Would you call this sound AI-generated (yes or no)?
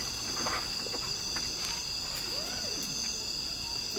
no